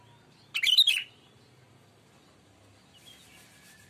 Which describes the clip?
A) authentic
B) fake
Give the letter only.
A